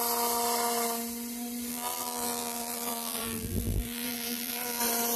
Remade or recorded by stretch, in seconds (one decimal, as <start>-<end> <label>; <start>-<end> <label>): 0.0-1.7 recorded; 1.7-4.8 remade; 4.8-5.2 recorded